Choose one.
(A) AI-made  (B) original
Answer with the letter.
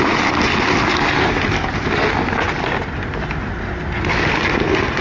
B